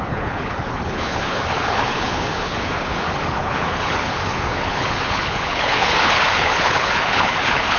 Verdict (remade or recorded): remade